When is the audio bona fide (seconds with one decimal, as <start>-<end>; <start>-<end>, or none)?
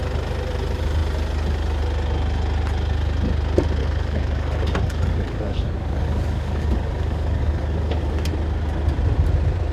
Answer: 0.0-3.8; 8.3-9.7